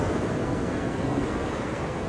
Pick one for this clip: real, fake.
fake